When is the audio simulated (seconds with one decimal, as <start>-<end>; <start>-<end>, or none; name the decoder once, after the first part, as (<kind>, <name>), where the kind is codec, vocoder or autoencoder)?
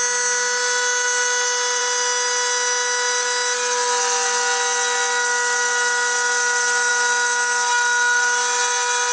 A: none